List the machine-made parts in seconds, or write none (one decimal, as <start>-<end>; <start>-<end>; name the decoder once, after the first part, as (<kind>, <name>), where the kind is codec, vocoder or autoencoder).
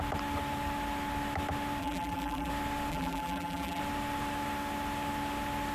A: 1.8-2.5 (vocoder, BigVGAN v2); 2.9-3.8